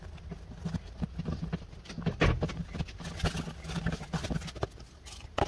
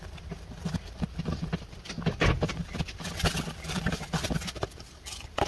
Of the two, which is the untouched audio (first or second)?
first